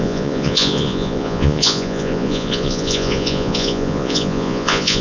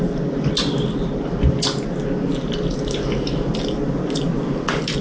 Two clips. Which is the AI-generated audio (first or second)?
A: first